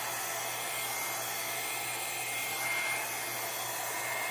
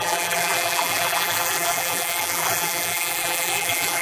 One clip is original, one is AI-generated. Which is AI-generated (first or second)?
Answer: second